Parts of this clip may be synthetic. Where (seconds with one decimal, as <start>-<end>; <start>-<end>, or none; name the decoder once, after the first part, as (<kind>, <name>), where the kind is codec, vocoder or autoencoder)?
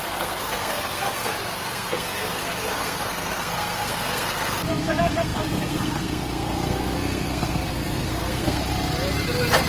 0.0-8.6 (codec, SNAC)